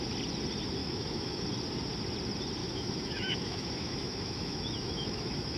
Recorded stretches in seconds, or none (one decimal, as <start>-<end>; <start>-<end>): 0.0-0.8; 1.4-2.6